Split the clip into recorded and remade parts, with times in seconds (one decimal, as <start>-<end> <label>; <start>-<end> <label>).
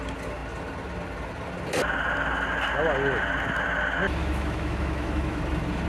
0.0-4.2 recorded; 4.2-5.4 remade; 5.4-5.9 recorded